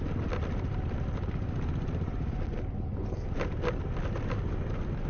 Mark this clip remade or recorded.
recorded